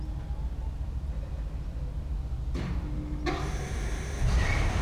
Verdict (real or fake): real